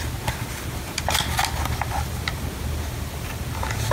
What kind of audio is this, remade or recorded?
recorded